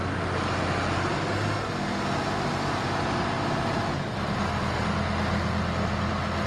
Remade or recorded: recorded